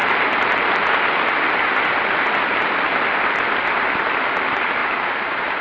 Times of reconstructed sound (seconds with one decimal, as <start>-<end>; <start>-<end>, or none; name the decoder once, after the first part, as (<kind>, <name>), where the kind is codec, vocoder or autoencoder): 0.0-0.8 (vocoder, BigVGAN v2); 4.8-5.6